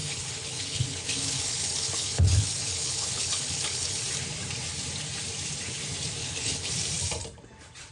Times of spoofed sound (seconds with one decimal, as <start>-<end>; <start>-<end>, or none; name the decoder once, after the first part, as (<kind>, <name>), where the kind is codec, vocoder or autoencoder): 0.0-4.0 (codec, HILCodec); 6.2-6.7